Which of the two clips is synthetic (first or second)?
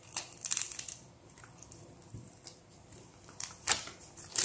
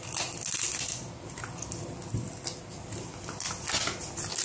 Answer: first